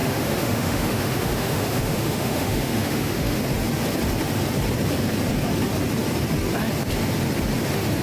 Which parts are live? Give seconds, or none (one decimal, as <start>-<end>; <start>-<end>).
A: 3.4-8.0